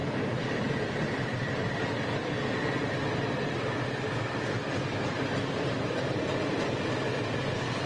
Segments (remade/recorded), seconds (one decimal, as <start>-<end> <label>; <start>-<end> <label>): 0.0-7.9 recorded